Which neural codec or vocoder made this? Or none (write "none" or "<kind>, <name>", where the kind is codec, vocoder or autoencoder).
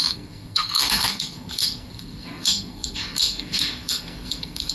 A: codec, SNAC